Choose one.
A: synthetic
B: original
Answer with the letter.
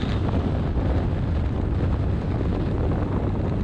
B